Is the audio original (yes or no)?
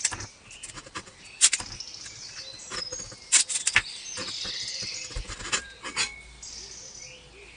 yes